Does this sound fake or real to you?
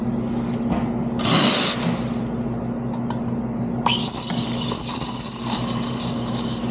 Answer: real